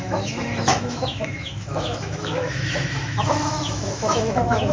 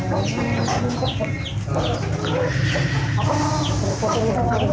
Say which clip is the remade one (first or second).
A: first